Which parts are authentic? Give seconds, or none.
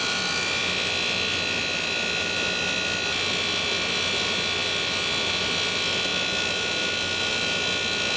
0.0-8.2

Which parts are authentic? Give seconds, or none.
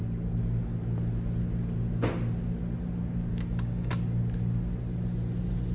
0.0-3.3; 3.9-5.7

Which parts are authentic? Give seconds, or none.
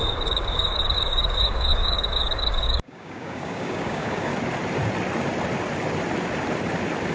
4.3-7.1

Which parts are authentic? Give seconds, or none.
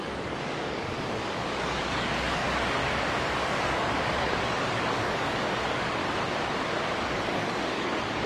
2.8-3.4; 6.0-7.0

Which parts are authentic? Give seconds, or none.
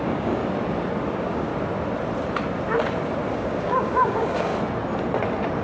0.4-1.1; 1.5-3.3; 4.5-5.6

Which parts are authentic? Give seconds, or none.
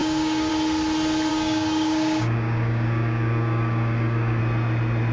0.5-1.3; 4.4-5.1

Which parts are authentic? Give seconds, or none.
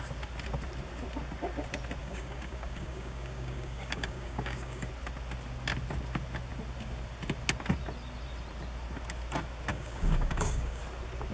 0.0-2.0; 4.9-9.7; 10.8-11.3